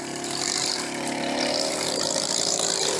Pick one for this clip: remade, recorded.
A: remade